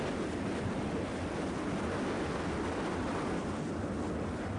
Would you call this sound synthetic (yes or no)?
no